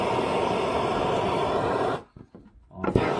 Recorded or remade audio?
remade